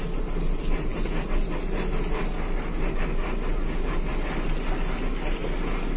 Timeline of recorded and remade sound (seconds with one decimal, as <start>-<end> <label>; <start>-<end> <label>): 0.0-6.0 recorded